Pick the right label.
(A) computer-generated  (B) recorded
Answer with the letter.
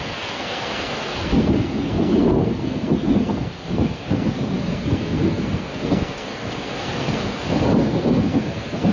A